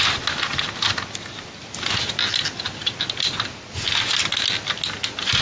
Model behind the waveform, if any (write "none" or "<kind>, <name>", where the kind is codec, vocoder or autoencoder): none